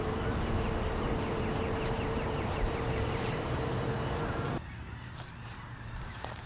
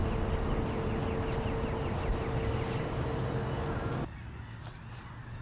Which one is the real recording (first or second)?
second